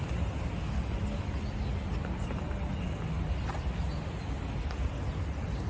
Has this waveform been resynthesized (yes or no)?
no